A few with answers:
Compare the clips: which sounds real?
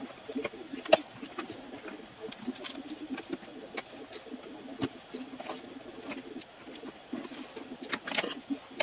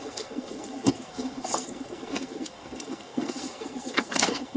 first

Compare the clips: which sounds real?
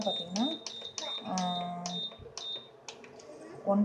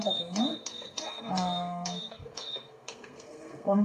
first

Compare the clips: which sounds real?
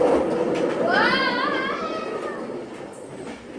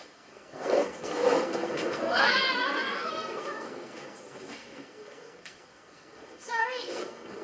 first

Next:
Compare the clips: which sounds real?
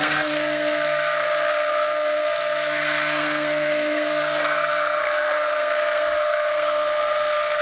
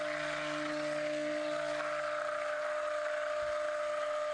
second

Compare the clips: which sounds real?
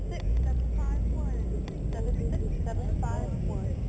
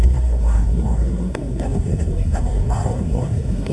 first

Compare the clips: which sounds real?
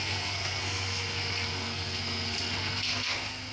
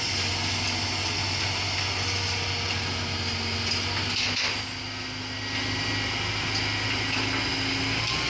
second